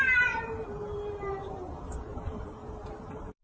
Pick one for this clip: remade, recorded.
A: remade